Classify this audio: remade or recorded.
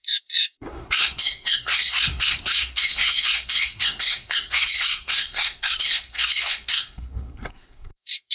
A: remade